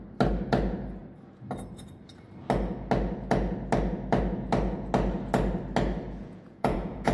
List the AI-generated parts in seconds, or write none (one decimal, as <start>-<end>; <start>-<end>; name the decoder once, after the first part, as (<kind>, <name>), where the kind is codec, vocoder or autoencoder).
6.2-7.1 (vocoder, Vocos)